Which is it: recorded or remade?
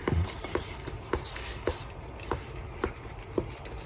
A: recorded